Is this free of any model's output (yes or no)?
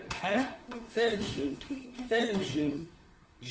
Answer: no